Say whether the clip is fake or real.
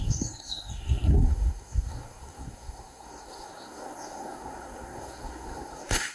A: fake